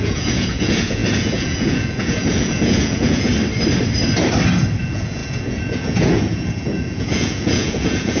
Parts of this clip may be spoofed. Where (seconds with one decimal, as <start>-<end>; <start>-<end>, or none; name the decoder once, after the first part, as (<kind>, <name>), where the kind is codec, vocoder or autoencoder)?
0.0-3.3 (vocoder, Vocos); 4.8-8.2